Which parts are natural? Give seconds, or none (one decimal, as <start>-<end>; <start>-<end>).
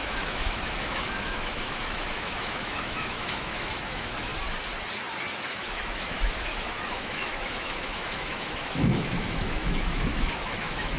4.3-5.4